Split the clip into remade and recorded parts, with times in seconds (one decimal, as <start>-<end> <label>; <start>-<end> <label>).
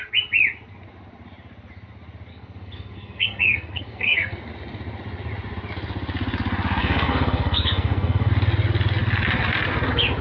0.0-2.3 recorded; 2.3-4.4 remade; 4.4-6.8 recorded; 6.8-8.3 remade; 8.3-10.2 recorded